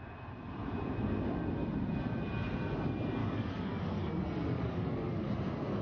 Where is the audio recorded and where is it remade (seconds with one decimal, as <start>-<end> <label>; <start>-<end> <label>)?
0.0-3.2 recorded; 3.2-4.1 remade; 4.1-4.5 recorded; 4.5-5.3 remade; 5.3-5.8 recorded